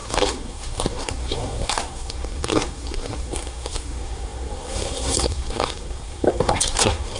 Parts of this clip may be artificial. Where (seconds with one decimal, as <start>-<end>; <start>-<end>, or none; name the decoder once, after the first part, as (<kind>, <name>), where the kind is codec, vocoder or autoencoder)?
0.0-7.2 (codec, SNAC)